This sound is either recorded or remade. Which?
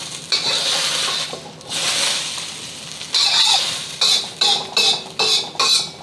recorded